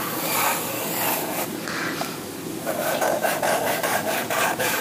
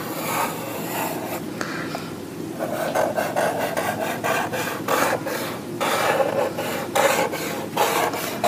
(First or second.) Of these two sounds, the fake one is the first